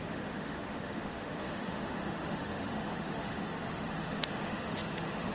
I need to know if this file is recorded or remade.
remade